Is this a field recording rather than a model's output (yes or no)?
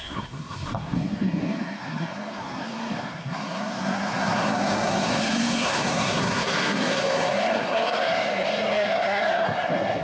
no